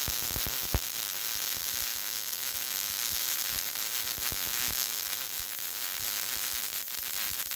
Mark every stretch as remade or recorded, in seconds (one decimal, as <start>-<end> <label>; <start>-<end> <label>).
0.0-1.9 recorded; 1.9-3.0 remade; 3.0-4.3 recorded; 4.3-5.0 remade; 5.0-7.6 recorded